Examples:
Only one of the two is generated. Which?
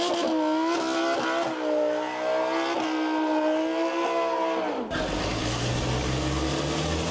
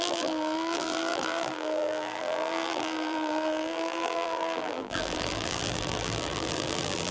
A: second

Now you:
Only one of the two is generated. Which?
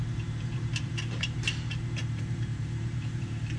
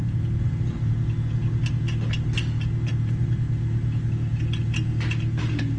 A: first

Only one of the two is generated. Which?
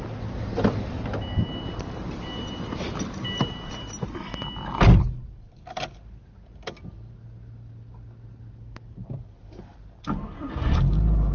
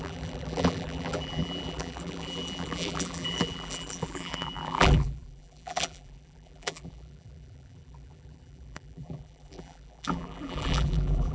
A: second